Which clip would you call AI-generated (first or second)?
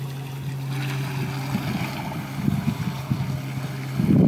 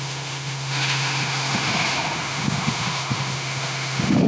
second